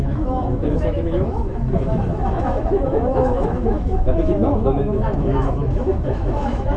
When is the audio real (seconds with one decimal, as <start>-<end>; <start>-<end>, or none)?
none